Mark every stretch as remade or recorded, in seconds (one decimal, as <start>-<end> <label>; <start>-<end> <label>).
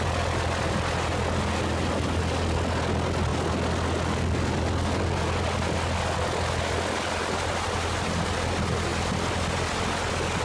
0.0-10.4 recorded